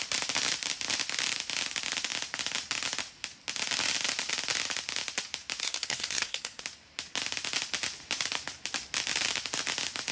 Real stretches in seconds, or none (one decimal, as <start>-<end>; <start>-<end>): 0.0-5.6; 6.6-10.1

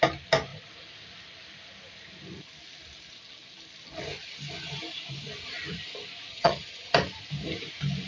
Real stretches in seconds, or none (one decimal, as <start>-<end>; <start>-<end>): 0.0-6.3; 6.9-8.1

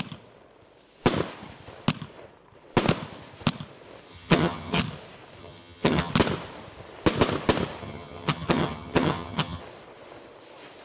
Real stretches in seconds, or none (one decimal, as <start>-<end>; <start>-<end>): 0.0-4.1; 4.8-5.4; 6.1-7.8; 9.6-10.8